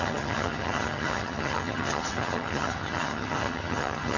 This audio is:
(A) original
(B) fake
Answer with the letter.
B